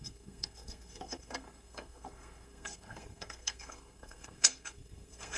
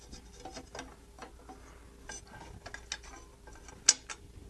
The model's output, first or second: first